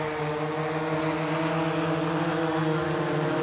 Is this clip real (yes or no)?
yes